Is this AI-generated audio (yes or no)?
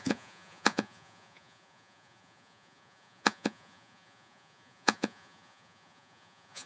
yes